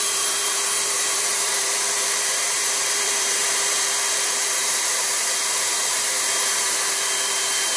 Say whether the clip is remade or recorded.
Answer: remade